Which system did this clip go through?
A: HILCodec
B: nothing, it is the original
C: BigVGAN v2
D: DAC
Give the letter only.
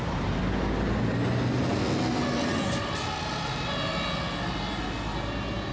B